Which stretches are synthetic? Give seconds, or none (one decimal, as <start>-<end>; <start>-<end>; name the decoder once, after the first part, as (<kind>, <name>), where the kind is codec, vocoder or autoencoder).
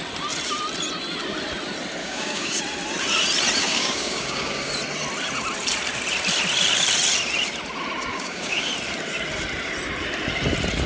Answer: 2.0-2.6 (codec, DAC); 3.6-4.7; 8.1-8.7